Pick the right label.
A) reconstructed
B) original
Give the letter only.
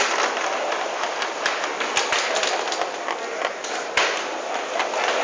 B